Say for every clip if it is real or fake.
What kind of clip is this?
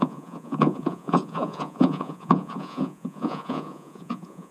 fake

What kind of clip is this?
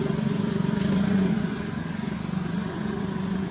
fake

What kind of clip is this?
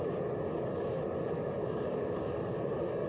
real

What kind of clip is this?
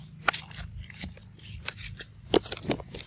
real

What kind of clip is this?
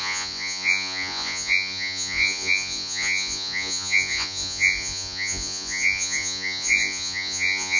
fake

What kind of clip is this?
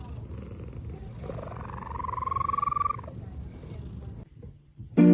real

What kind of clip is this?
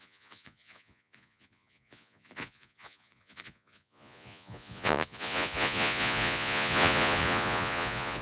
fake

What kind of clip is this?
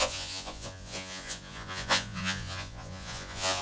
fake